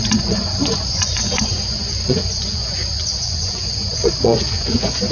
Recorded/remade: remade